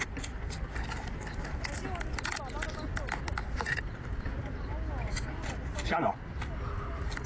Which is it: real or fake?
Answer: real